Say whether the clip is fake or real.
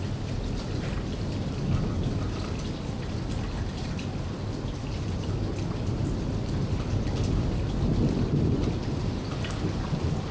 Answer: real